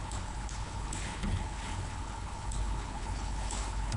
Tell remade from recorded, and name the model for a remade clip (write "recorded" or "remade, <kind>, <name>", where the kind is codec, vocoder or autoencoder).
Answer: remade, codec, HILCodec